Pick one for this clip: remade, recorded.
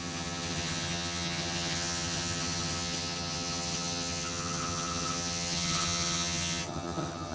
remade